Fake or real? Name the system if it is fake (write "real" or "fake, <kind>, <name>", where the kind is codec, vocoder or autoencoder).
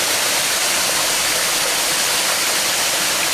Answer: real